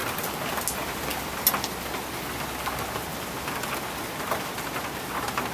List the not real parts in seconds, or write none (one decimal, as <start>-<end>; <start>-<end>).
none